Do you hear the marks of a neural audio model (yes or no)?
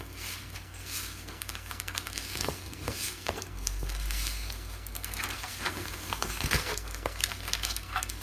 yes